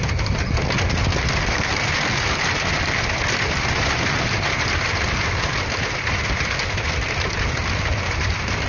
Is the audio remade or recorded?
recorded